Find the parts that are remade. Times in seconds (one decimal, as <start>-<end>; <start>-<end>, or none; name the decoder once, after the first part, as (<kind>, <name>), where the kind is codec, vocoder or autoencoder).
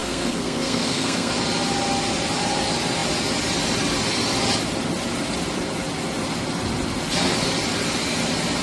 0.0-1.3 (codec, SNAC)